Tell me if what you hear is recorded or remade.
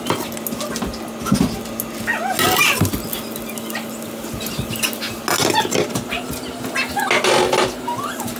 recorded